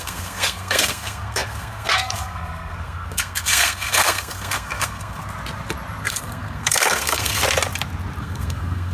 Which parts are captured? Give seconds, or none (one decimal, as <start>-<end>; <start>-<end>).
5.2-6.0; 7.4-8.2